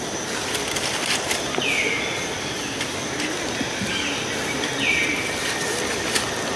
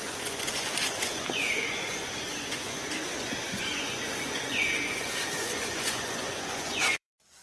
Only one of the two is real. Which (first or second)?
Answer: first